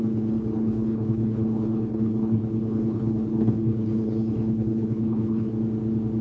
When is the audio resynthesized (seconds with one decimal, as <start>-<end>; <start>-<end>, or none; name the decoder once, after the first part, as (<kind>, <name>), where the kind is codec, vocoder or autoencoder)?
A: 0.0-5.5 (codec, HILCodec)